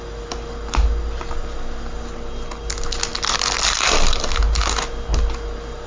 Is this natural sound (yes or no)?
yes